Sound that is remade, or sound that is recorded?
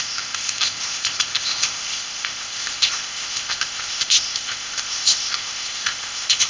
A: remade